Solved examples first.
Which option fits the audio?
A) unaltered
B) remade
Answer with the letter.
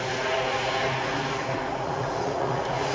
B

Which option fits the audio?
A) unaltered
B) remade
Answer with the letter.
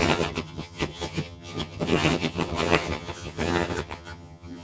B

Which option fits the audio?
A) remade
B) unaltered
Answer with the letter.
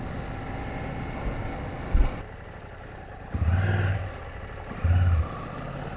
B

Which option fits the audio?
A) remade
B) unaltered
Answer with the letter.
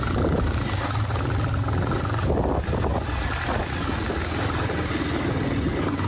B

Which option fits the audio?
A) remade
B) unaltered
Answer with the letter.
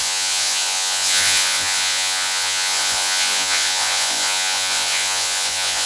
A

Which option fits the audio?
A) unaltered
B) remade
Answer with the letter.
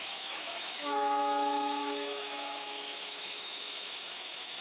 B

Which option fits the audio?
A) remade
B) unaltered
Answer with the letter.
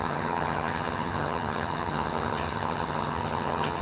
A